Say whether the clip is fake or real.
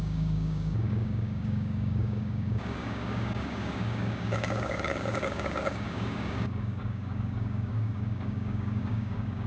fake